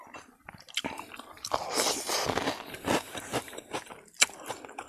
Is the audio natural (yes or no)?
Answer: no